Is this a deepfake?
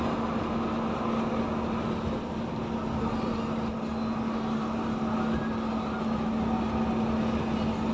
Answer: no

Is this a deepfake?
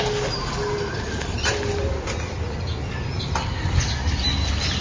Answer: no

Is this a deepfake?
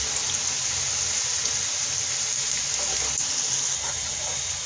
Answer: no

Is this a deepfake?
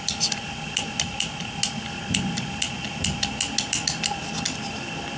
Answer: no